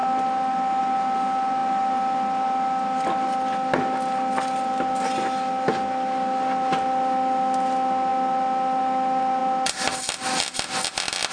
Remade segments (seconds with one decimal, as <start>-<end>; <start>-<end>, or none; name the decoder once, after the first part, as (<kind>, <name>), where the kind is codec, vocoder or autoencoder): none